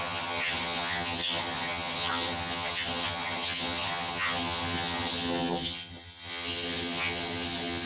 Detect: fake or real fake